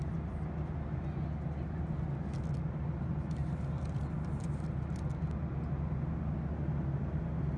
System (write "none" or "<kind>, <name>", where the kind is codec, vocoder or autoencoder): none